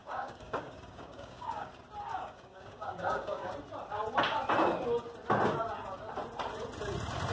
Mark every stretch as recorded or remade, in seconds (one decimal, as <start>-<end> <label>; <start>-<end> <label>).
0.0-1.7 remade; 1.7-2.1 recorded; 2.1-3.5 remade; 3.5-7.3 recorded